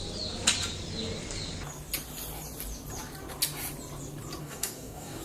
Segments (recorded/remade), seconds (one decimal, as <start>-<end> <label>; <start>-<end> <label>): 0.0-4.4 recorded; 4.4-5.2 remade